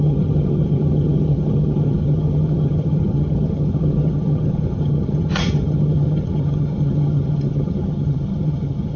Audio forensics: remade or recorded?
remade